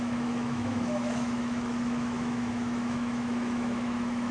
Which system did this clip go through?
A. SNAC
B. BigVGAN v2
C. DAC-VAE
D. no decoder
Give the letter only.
C